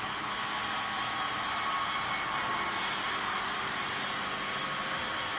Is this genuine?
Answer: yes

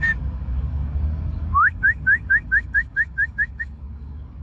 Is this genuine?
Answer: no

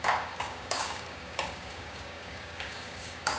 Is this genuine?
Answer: no